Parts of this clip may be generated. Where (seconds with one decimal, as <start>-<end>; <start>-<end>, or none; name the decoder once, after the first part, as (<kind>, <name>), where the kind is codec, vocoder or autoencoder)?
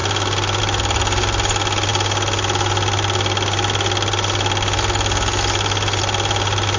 none